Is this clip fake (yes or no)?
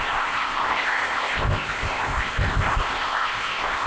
yes